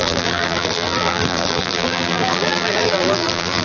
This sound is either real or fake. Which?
fake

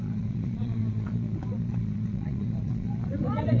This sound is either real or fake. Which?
fake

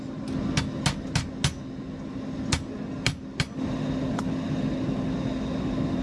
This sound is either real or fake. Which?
real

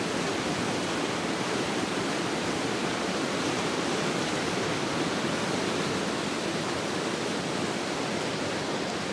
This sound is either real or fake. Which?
fake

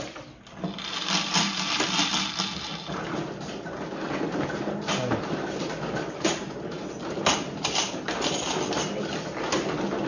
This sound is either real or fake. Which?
real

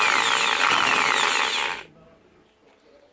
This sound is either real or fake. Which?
real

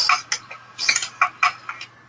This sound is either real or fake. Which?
real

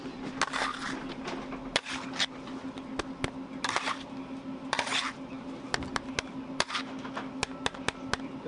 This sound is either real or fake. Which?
real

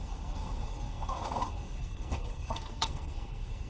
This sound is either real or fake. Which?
fake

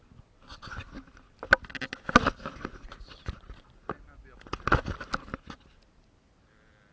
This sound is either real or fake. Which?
real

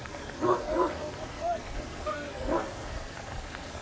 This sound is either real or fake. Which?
fake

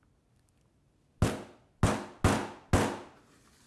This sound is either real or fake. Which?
real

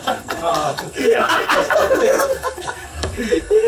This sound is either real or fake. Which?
fake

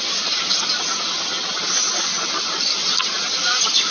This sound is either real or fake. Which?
real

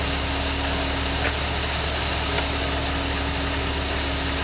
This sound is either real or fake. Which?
real